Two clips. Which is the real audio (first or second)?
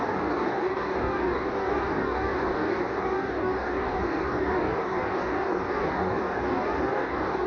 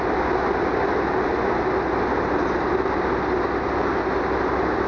second